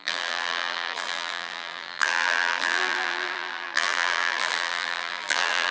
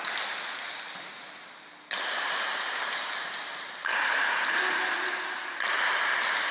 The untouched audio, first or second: second